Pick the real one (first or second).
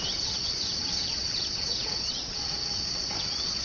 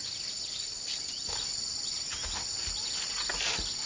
second